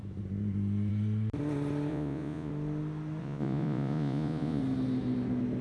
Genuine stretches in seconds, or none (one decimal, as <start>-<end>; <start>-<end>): 0.0-1.9; 2.5-3.2; 4.6-5.6